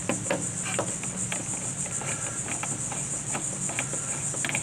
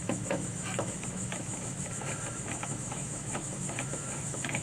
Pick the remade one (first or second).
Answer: second